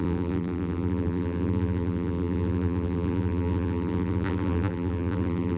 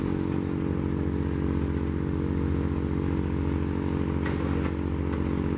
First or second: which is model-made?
first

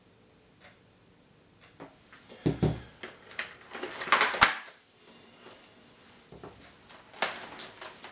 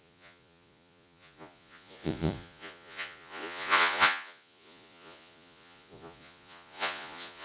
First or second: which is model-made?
second